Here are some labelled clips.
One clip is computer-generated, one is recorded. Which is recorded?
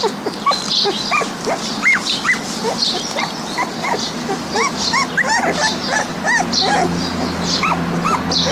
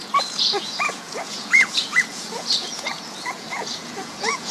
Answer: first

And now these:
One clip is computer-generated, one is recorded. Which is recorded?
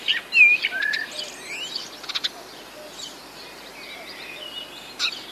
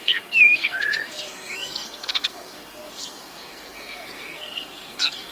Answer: first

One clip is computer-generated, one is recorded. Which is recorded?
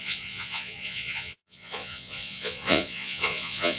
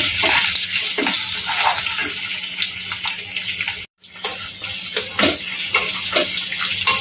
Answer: second